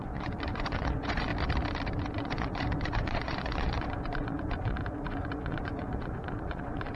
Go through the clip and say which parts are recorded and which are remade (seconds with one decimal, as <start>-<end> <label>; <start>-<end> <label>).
0.0-1.3 remade; 1.3-2.1 recorded; 2.1-7.0 remade

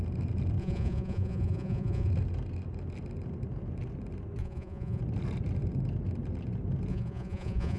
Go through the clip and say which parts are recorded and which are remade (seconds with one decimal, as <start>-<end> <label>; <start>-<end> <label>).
0.0-0.6 recorded; 0.6-2.1 remade; 2.1-4.4 recorded; 4.4-5.0 remade; 5.0-6.9 recorded; 6.9-7.8 remade

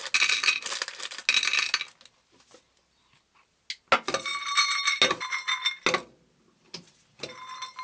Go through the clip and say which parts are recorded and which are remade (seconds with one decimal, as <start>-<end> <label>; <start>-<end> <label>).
0.0-7.8 recorded

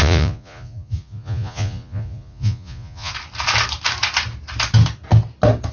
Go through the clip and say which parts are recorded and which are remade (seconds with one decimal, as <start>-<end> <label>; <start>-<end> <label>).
0.0-3.1 remade; 3.1-5.7 recorded

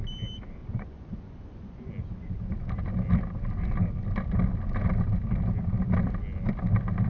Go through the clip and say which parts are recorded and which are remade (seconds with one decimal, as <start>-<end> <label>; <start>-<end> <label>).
0.0-0.6 recorded; 0.6-1.9 remade; 1.9-7.1 recorded

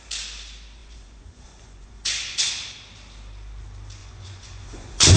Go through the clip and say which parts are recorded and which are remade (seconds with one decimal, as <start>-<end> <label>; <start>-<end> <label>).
0.0-0.8 recorded; 0.8-2.5 remade; 2.5-4.0 recorded; 4.0-5.2 remade